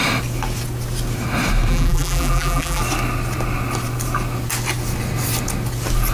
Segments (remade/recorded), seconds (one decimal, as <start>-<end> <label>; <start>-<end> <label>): 0.0-1.7 recorded; 1.7-2.8 remade; 2.8-6.1 recorded